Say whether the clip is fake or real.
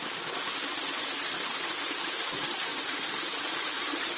real